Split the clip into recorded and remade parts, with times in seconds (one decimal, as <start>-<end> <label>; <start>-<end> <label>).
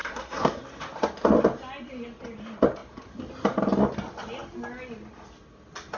0.0-0.6 remade; 0.6-6.0 recorded